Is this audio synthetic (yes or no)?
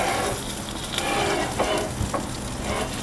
no